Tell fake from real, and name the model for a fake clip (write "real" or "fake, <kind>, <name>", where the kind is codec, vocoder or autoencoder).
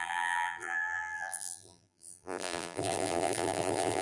fake, vocoder, BigVGAN v2